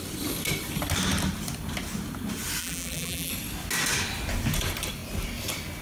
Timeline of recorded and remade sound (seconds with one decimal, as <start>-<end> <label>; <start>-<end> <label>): 0.0-2.6 recorded; 2.6-3.3 remade; 3.3-5.8 recorded